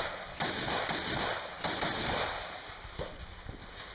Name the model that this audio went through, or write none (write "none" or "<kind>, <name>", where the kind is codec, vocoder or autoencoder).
vocoder, BigVGAN v2